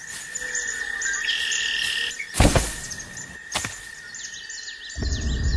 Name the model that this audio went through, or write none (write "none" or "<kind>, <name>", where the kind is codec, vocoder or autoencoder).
none